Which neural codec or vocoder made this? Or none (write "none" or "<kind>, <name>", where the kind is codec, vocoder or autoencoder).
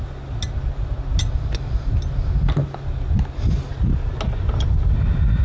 none